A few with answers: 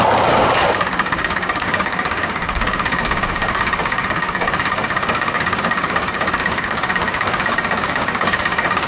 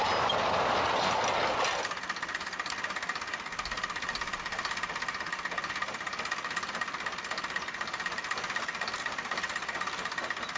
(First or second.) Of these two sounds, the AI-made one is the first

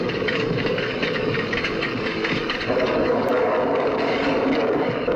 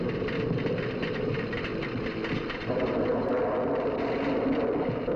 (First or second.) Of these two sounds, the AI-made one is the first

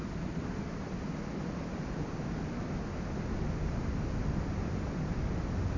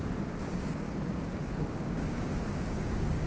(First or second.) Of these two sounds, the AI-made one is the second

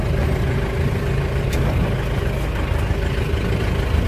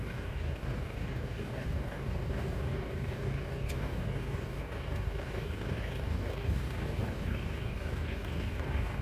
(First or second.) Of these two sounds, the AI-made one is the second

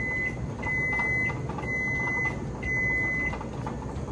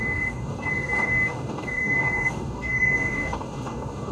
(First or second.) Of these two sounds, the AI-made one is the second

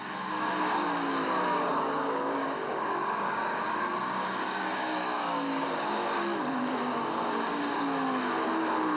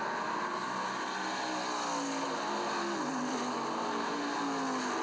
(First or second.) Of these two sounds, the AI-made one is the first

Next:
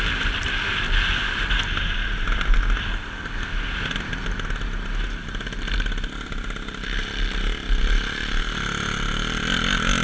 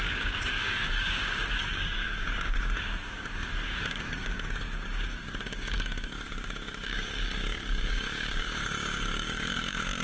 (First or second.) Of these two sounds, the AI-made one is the second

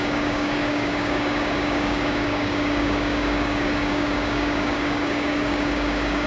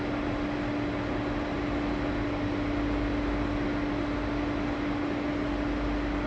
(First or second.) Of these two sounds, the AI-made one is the first